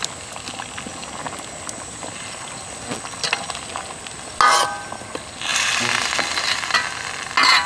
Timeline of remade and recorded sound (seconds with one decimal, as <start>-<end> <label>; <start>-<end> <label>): 0.0-7.7 recorded